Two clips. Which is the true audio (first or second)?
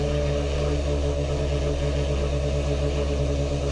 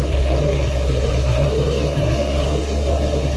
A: first